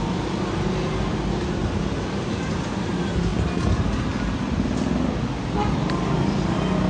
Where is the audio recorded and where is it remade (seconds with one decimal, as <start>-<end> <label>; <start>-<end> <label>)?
0.0-6.9 recorded

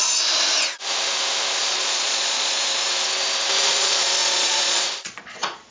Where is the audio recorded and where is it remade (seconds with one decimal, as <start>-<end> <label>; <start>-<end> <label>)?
0.0-1.6 recorded; 1.6-2.5 remade; 2.5-3.7 recorded; 3.7-5.7 remade

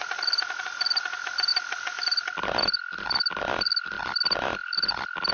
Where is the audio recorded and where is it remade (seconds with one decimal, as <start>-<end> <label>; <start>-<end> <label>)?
0.0-5.3 recorded

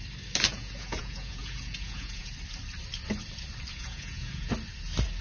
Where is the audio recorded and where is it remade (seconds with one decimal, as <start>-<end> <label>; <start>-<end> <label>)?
0.0-0.5 recorded; 0.5-2.3 remade; 2.3-3.7 recorded; 3.7-4.5 remade; 4.5-5.2 recorded

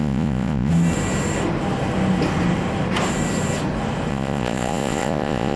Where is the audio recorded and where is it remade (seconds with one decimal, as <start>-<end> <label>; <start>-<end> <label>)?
0.0-0.7 remade; 0.7-4.1 recorded; 4.1-5.6 remade